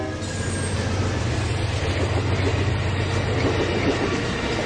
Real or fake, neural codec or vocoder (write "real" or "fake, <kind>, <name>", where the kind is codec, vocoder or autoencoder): real